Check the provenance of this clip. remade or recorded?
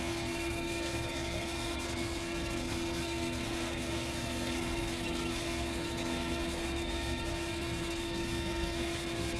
remade